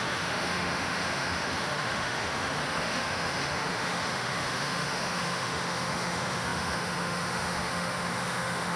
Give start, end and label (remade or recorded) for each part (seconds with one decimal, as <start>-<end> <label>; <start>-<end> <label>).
0.0-8.8 remade